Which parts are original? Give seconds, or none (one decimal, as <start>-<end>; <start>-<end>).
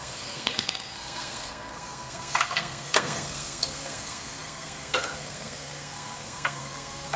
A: none